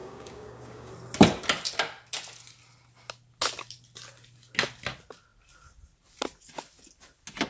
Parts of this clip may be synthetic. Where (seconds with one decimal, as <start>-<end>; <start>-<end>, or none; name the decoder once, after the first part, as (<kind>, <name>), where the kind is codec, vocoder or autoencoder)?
0.0-0.9 (codec, DAC)